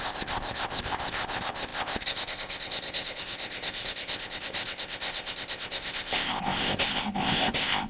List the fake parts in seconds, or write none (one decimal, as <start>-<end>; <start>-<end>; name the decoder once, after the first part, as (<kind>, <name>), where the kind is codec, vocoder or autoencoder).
0.0-7.9 (codec, ZipCodec)